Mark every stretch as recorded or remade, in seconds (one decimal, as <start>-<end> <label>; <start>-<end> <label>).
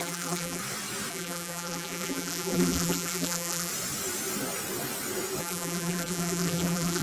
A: 0.0-0.6 remade; 0.6-1.1 recorded; 1.1-3.7 remade; 3.7-5.4 recorded; 5.4-7.0 remade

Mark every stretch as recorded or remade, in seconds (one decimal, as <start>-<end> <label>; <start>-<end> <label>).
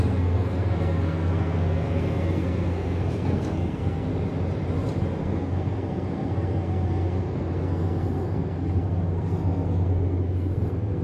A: 0.0-4.1 remade; 4.1-5.2 recorded; 5.2-11.0 remade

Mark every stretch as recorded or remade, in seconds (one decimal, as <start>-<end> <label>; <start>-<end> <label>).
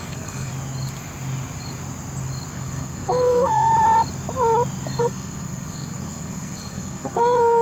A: 0.0-0.5 remade; 0.5-2.5 recorded; 2.5-3.7 remade; 3.7-5.0 recorded; 5.0-7.6 remade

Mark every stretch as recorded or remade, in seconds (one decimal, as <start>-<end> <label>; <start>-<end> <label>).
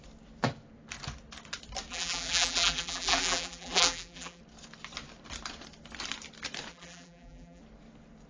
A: 0.0-1.9 recorded; 1.9-4.4 remade; 4.4-6.7 recorded; 6.7-7.6 remade; 7.6-8.3 recorded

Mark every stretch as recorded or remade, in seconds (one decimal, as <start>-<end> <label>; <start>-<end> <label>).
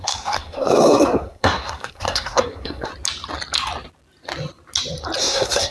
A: 0.0-2.9 remade; 2.9-5.2 recorded; 5.2-5.7 remade